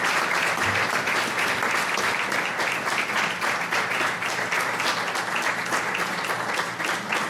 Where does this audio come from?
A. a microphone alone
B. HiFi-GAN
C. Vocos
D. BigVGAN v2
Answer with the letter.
A